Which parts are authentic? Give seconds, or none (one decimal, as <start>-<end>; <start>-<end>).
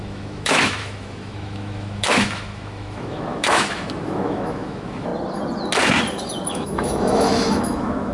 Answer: 5.1-6.5